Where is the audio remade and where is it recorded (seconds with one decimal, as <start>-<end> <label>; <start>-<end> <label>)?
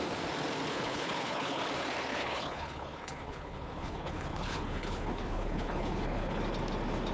0.0-0.7 recorded; 0.7-1.6 remade; 1.6-2.1 recorded; 2.1-6.4 remade; 6.4-7.1 recorded